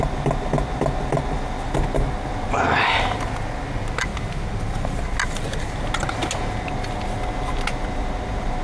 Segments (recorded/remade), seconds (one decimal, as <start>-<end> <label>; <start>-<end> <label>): 0.0-8.6 recorded